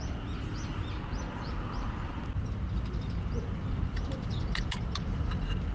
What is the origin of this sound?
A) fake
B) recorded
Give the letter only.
B